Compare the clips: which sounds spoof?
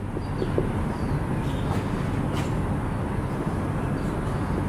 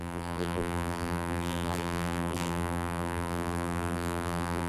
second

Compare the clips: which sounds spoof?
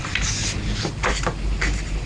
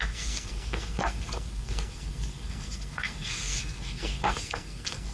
second